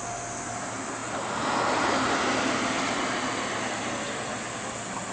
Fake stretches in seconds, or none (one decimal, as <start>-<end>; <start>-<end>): none